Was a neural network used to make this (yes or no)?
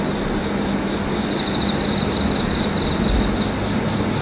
no